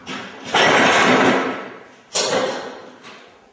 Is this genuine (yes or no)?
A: yes